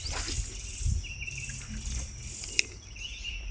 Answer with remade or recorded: recorded